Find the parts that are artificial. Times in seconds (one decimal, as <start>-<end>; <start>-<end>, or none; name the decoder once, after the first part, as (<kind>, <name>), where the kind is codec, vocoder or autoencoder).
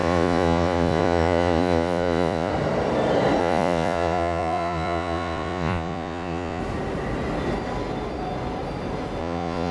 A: 0.0-2.5 (vocoder, Vocos); 3.4-6.6; 9.2-9.7